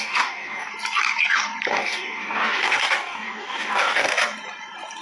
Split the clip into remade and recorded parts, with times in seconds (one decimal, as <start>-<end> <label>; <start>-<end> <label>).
0.0-0.7 remade; 0.7-1.7 recorded; 1.7-4.1 remade; 4.1-5.0 recorded